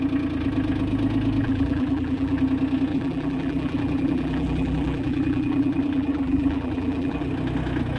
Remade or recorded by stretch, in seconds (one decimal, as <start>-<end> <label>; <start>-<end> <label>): 0.0-1.4 recorded; 1.4-2.4 remade; 2.4-2.9 recorded; 2.9-7.3 remade; 7.3-8.0 recorded